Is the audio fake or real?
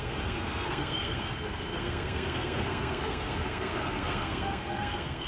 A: fake